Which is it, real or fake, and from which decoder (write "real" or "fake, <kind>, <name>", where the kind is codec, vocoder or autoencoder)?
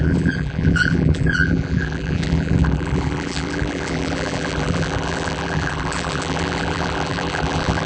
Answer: fake, vocoder, BigVGAN v2